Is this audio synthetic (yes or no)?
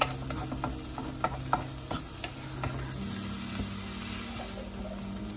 no